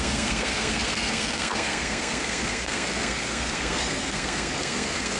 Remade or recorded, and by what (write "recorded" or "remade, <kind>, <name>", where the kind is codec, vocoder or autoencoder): remade, codec, SNAC